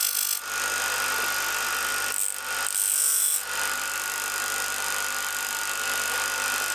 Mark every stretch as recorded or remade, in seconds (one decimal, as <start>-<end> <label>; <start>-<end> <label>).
0.0-6.7 recorded

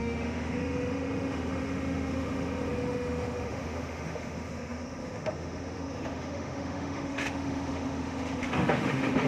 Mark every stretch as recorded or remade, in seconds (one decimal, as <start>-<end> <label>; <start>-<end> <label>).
0.0-9.3 remade

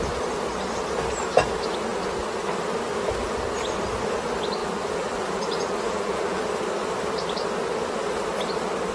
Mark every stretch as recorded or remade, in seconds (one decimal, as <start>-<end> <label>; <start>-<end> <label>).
0.0-4.6 recorded; 4.6-6.4 remade; 6.4-8.9 recorded

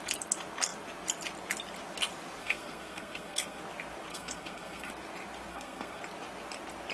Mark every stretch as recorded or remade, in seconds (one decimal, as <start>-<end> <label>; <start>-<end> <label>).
0.0-2.4 recorded; 2.4-3.6 remade; 3.6-4.1 recorded; 4.1-4.9 remade; 4.9-5.5 recorded; 5.5-6.0 remade; 6.0-6.9 recorded

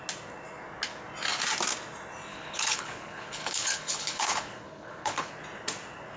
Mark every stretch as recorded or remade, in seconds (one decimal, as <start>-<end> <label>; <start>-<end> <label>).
0.0-2.3 recorded; 2.3-5.3 remade; 5.3-6.2 recorded